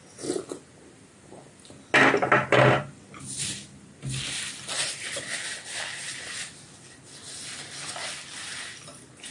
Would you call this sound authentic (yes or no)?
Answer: yes